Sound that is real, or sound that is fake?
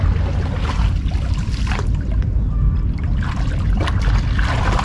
real